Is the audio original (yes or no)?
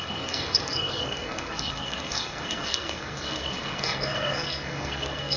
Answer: no